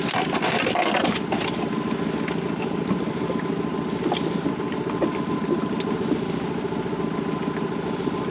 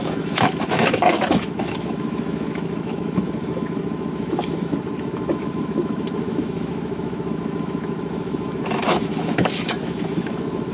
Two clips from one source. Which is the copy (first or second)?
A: second